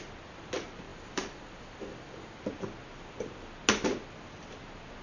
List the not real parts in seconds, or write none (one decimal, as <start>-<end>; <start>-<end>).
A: 0.9-2.4